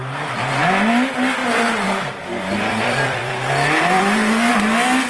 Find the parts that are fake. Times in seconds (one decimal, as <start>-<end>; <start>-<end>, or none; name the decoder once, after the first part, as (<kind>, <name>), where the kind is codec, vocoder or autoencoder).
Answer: 1.4-4.5 (vocoder, BigVGAN v2)